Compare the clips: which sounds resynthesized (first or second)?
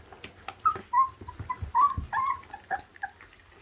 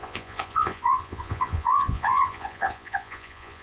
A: second